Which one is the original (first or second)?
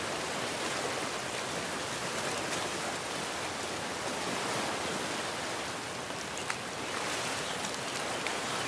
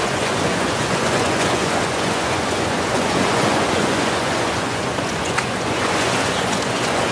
first